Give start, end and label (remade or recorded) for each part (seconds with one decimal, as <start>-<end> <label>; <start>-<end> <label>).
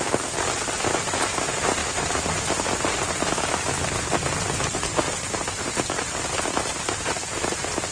0.0-7.9 recorded